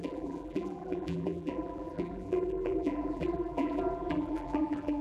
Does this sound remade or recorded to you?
remade